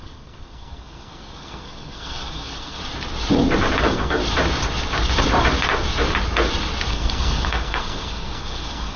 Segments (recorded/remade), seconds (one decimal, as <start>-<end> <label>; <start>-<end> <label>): 0.0-2.8 remade; 2.8-3.8 recorded; 3.8-4.2 remade; 4.2-6.9 recorded; 6.9-9.0 remade